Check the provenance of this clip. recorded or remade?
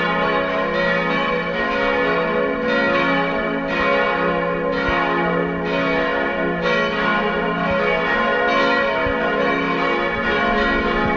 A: recorded